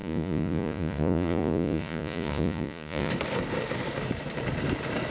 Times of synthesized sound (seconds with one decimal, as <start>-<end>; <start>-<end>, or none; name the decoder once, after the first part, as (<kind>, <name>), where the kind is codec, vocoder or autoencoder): 0.0-3.1 (vocoder, Vocos)